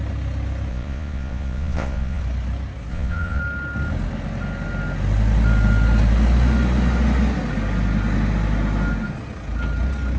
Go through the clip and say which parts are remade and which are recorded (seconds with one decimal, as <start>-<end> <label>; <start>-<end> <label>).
0.0-0.7 recorded; 0.7-2.2 remade; 2.2-2.9 recorded; 2.9-3.4 remade; 3.4-10.2 recorded